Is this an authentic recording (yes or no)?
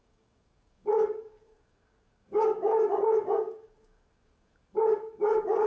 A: no